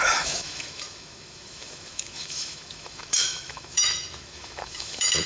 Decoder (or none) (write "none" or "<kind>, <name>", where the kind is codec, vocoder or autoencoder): autoencoder, DAC-VAE